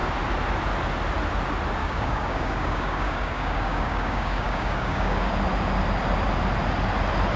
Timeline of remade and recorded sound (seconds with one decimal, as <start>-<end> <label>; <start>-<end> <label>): 0.0-1.8 recorded; 1.8-5.3 remade; 5.3-7.4 recorded